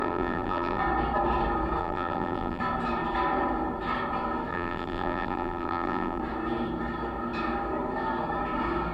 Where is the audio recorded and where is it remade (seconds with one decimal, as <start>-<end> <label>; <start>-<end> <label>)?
0.0-0.8 remade; 0.8-1.8 recorded; 1.8-2.6 remade; 2.6-4.5 recorded; 4.5-6.2 remade; 6.2-8.9 recorded